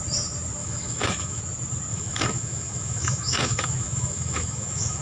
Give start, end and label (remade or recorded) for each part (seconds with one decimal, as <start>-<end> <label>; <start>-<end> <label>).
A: 0.0-0.6 recorded; 0.6-1.4 remade; 1.4-1.9 recorded; 1.9-5.0 remade